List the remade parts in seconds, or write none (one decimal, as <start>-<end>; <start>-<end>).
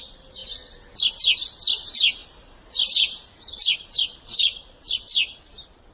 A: 2.2-4.7